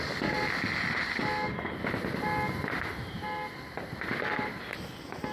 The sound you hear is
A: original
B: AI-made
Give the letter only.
A